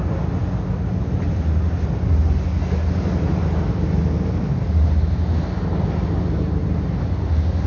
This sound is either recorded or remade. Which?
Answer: recorded